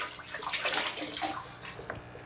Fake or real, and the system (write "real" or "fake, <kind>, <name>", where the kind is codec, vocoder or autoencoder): real